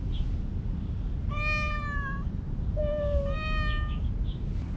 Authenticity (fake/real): real